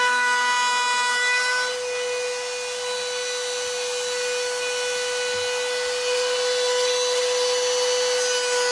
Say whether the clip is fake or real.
real